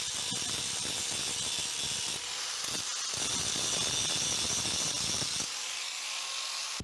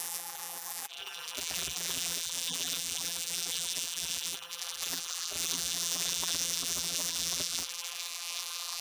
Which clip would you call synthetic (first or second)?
second